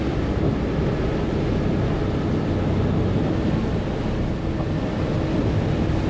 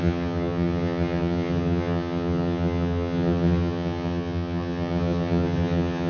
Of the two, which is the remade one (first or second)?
second